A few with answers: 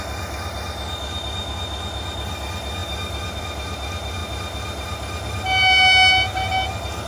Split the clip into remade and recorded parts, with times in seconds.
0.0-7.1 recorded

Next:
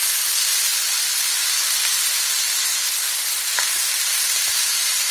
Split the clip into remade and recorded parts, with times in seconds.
0.0-5.1 recorded

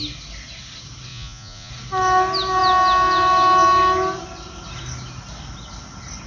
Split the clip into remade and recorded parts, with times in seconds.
0.0-1.1 recorded; 1.1-1.7 remade; 1.7-6.3 recorded

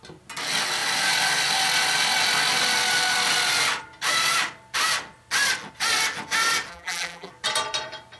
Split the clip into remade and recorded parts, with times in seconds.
0.0-6.7 recorded; 6.7-7.3 remade; 7.3-8.2 recorded